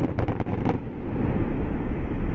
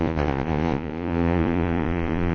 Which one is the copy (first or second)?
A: second